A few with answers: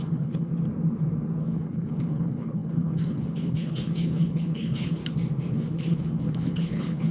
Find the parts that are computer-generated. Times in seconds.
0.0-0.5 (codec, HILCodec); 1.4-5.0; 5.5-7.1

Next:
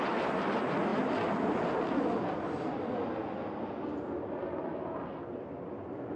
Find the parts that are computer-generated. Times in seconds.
none

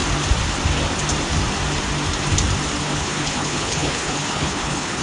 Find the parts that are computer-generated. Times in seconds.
2.8-5.0 (codec, HILCodec)

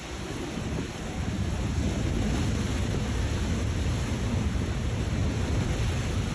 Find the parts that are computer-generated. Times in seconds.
none

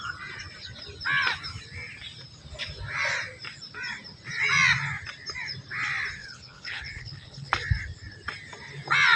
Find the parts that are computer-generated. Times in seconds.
6.2-7.5 (codec, HILCodec)

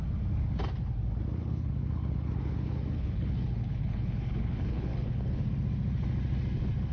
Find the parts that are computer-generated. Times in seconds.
1.4-5.5 (codec, HILCodec)